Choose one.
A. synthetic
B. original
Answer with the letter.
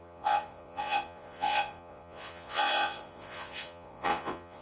A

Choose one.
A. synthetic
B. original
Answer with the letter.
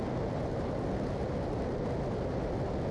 B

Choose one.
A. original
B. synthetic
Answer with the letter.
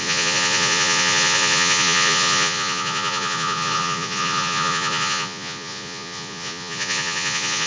B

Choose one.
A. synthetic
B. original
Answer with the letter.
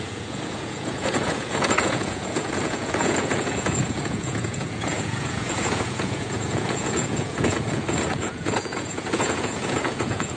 A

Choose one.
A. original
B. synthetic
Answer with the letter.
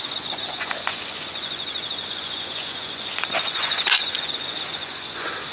B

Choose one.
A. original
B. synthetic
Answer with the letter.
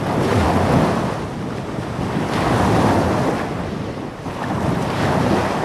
A